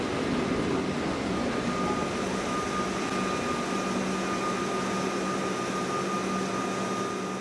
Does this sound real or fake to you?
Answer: real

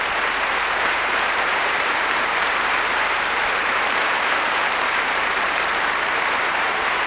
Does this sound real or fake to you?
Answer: fake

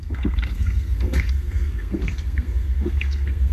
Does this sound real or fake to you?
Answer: fake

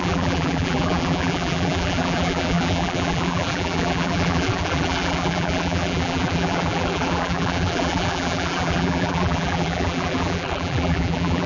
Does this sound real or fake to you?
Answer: fake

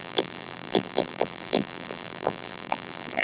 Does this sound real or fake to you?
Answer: fake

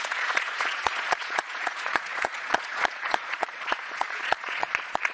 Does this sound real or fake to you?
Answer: fake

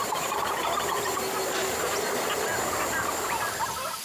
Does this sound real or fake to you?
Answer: real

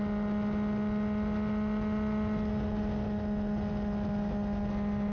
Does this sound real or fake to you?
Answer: real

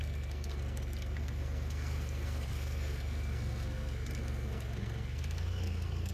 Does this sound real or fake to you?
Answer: fake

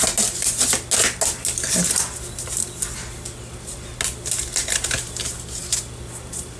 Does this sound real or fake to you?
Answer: real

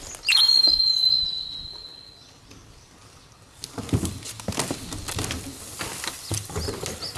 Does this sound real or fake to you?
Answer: real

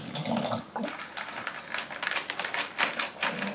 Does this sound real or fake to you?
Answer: real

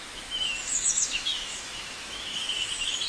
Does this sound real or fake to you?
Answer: fake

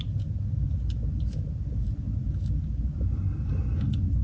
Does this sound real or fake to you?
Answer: real